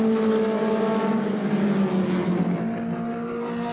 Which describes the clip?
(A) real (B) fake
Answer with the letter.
A